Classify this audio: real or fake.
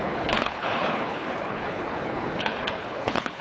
fake